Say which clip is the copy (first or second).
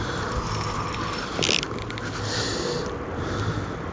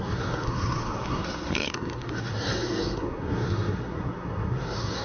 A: second